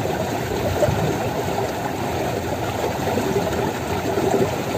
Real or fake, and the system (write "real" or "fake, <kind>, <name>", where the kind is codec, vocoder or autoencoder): real